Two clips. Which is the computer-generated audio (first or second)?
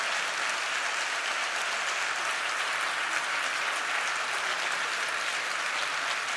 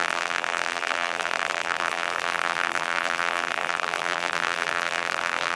second